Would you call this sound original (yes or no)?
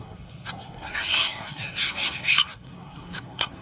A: no